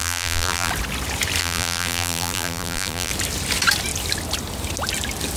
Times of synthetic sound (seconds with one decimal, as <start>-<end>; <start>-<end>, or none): 0.0-0.7; 1.4-3.1